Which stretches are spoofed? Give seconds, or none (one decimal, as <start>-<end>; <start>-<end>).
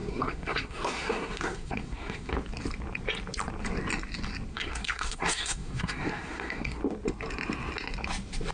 0.0-2.3; 4.5-6.8